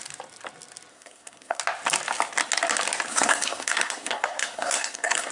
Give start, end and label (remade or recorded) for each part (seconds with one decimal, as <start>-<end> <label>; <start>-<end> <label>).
0.0-0.9 recorded; 0.9-1.6 remade; 1.6-3.1 recorded; 3.1-5.3 remade

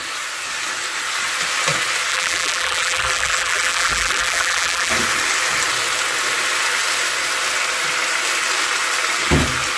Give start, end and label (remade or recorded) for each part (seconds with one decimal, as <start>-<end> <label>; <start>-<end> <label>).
0.0-2.1 recorded; 2.1-4.9 remade; 4.9-9.8 recorded

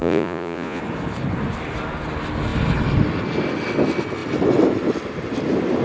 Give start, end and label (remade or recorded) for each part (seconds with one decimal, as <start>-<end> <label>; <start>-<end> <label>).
0.0-0.8 remade; 0.8-5.8 recorded

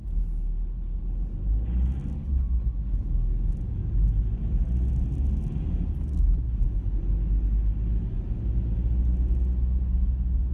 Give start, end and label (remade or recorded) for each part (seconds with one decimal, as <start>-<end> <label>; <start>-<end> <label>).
0.0-10.5 recorded

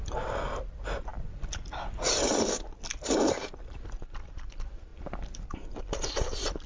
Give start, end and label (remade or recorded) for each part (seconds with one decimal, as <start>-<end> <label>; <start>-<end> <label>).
0.0-6.7 recorded